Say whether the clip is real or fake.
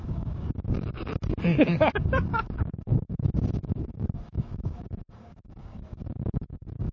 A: fake